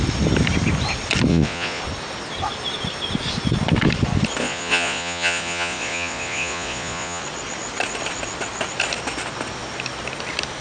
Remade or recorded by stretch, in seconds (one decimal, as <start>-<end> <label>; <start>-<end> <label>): 0.0-1.3 recorded; 1.3-1.8 remade; 1.8-4.4 recorded; 4.4-7.2 remade; 7.2-10.6 recorded